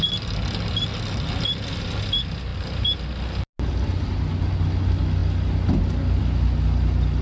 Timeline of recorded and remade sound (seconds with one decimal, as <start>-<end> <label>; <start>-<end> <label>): 0.0-7.2 recorded